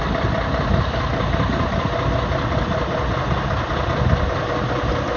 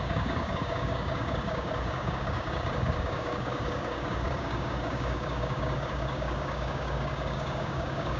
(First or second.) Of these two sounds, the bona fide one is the first